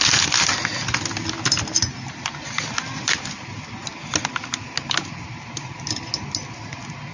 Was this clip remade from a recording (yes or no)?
no